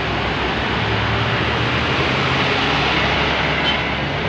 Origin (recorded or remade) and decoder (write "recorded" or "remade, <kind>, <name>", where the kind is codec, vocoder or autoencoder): recorded